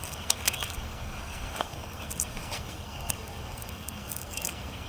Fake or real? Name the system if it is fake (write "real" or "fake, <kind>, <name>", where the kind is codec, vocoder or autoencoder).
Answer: fake, codec, SNAC